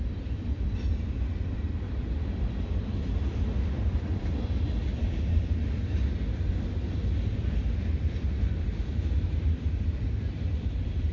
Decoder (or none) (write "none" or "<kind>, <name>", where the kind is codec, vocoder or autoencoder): vocoder, BigVGAN v2